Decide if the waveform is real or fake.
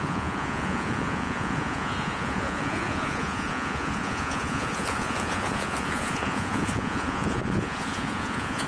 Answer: fake